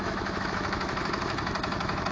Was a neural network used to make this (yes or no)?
yes